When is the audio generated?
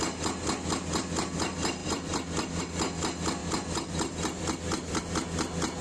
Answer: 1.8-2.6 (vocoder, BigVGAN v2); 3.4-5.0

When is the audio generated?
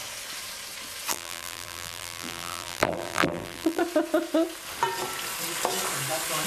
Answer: 1.1-3.8 (vocoder, BigVGAN v2)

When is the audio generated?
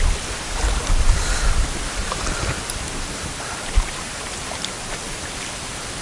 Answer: 2.0-4.9 (vocoder, BigVGAN v2)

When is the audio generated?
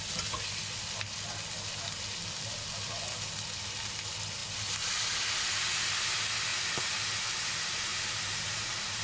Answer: 7.9-9.0 (vocoder, BigVGAN v2)